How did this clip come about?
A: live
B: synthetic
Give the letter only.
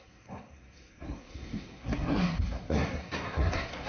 B